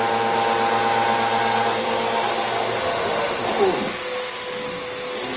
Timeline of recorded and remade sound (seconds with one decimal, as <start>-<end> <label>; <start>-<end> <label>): 0.0-2.8 recorded; 2.8-3.4 remade; 3.4-5.4 recorded